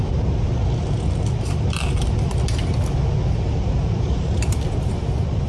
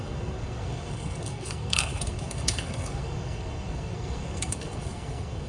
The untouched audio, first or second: first